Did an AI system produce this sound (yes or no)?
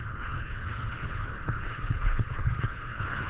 yes